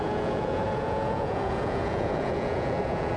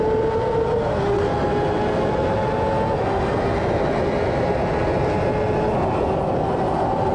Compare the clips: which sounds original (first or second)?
second